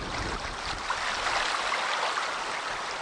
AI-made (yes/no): no